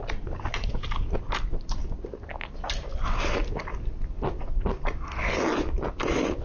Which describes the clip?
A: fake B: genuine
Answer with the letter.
B